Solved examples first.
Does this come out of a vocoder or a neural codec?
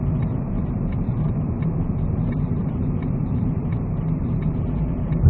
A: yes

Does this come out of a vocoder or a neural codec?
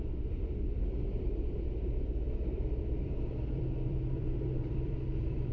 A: yes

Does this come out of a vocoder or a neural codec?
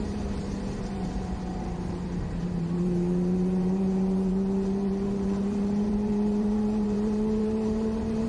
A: yes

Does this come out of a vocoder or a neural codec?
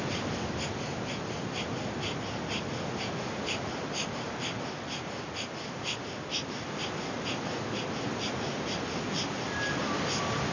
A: no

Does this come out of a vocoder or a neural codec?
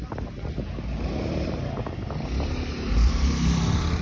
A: no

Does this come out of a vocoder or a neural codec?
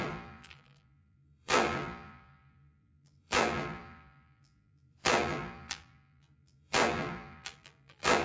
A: yes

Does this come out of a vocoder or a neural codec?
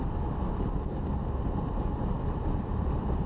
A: no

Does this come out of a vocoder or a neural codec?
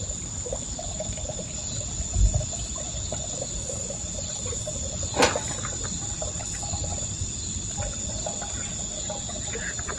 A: no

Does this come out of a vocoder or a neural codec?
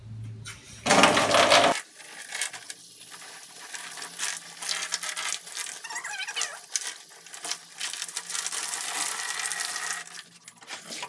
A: no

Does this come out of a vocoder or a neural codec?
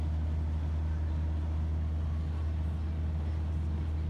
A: no